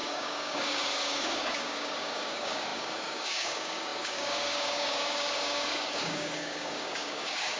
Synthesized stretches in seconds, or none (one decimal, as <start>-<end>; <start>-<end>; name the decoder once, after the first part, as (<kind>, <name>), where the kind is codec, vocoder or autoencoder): 0.0-7.6 (codec, DAC)